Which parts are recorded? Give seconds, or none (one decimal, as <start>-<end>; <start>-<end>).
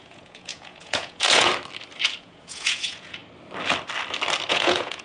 1.5-2.2; 3.2-4.5